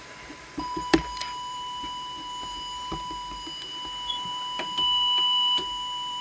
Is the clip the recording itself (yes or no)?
no